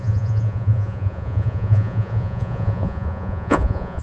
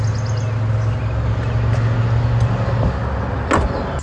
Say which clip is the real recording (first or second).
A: second